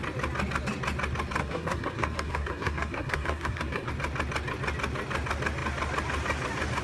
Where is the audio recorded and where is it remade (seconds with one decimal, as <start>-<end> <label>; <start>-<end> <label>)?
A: 0.0-1.4 recorded; 1.4-3.9 remade; 3.9-6.8 recorded